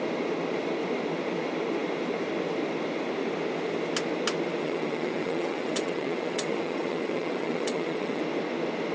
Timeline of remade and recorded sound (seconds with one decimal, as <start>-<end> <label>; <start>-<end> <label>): 0.0-4.6 recorded; 4.6-8.2 remade; 8.2-8.9 recorded